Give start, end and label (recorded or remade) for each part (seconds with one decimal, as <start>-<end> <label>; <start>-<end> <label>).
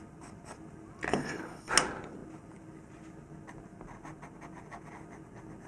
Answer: 0.0-1.1 recorded; 1.1-1.7 remade; 1.7-5.7 recorded